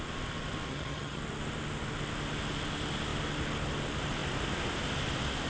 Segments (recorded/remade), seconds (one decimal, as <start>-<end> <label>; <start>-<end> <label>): 0.0-0.7 recorded; 0.7-1.2 remade; 1.2-5.5 recorded